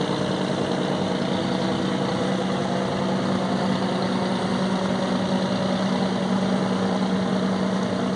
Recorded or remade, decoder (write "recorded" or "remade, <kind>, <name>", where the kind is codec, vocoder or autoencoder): recorded